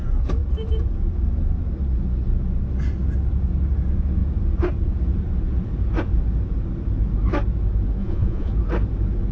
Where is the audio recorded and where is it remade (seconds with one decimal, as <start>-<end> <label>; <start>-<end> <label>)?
0.0-8.0 recorded; 8.0-8.5 remade; 8.5-9.3 recorded